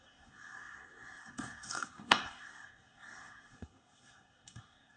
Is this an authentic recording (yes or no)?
no